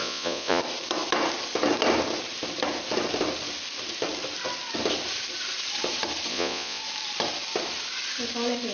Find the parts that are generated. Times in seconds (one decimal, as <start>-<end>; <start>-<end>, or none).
0.0-0.6; 6.3-6.8